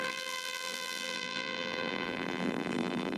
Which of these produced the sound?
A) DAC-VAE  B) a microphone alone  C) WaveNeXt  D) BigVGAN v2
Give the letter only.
D